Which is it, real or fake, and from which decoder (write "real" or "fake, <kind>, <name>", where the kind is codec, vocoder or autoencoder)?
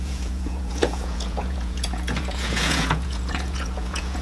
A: fake, vocoder, Vocos